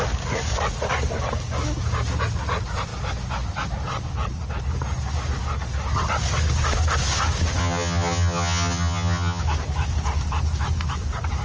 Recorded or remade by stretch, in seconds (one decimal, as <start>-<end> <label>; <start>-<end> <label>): 0.0-7.6 recorded; 7.6-9.4 remade; 9.4-11.4 recorded